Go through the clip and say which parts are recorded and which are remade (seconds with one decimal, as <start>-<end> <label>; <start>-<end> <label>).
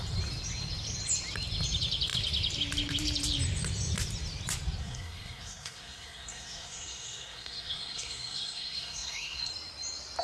0.0-4.8 recorded; 4.8-9.5 remade; 9.5-10.2 recorded